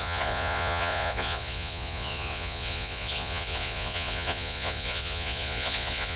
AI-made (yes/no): yes